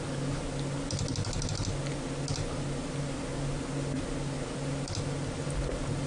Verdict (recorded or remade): recorded